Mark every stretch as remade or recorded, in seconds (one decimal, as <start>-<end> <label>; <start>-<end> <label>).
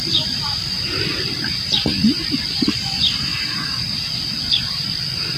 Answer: 0.0-5.4 recorded